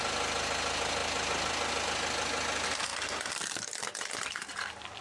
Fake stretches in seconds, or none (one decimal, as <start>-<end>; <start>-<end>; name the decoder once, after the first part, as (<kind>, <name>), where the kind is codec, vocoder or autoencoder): none